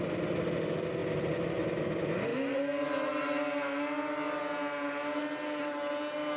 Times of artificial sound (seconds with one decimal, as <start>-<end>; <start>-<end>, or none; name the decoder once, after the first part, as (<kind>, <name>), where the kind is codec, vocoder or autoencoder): none